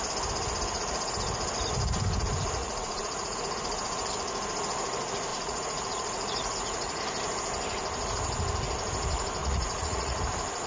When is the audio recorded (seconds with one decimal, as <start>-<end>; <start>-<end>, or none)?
0.0-2.6; 3.4-5.3; 7.0-9.4; 10.2-10.7